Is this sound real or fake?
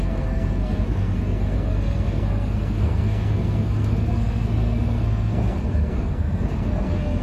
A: fake